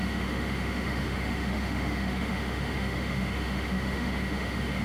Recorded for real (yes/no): no